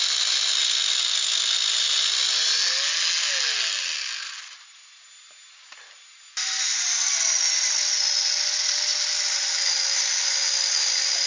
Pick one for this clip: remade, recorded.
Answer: recorded